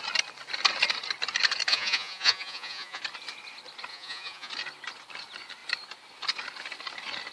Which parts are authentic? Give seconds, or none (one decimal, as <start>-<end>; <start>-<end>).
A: 0.0-1.7; 3.0-3.9; 4.5-7.3